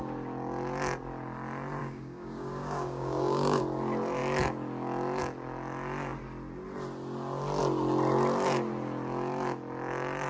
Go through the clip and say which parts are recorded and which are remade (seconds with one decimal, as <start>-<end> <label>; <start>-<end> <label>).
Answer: 0.0-1.8 recorded; 1.8-3.6 remade; 3.6-10.3 recorded